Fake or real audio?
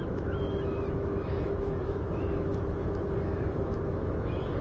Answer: fake